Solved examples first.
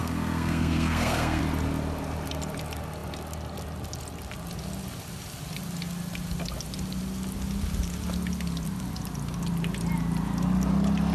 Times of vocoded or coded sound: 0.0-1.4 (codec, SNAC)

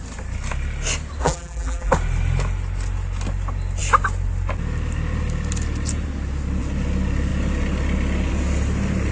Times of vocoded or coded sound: 1.2-1.9 (vocoder, BigVGAN v2)

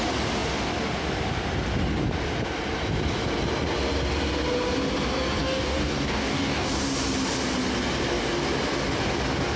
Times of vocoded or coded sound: 5.4-6.8 (codec, DAC)

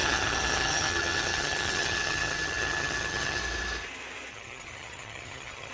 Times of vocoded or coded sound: 0.0-3.4 (vocoder, HiFi-GAN); 4.3-5.7

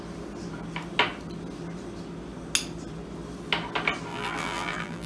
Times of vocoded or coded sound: 4.1-5.1 (vocoder, BigVGAN v2)

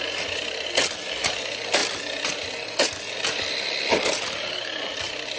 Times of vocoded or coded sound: none

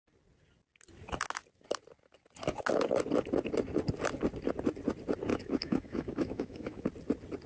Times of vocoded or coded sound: 5.3-6.8 (autoencoder, DAC-VAE)

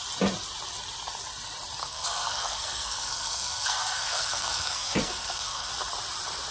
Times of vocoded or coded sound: 1.8-5.7 (codec, SNAC)